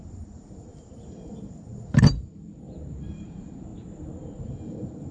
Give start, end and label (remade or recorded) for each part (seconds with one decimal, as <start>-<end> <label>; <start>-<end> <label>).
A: 0.0-0.7 remade; 0.7-1.6 recorded; 1.6-5.1 remade